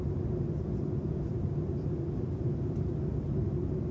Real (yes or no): yes